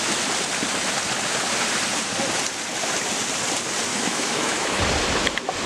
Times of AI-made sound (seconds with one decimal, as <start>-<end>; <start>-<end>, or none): 3.9-4.8